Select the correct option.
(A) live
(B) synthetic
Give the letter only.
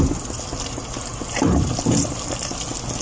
A